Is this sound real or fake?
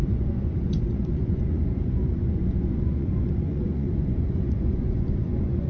fake